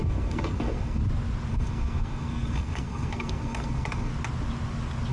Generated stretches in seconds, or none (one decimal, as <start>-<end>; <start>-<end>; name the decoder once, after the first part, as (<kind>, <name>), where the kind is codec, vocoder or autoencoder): 0.0-1.0 (codec, SNAC); 1.5-4.1